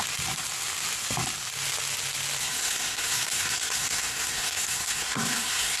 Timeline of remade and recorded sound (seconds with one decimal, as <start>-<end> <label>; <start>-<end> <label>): 0.0-2.4 recorded; 2.4-5.8 remade